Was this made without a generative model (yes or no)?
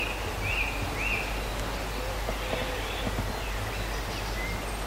yes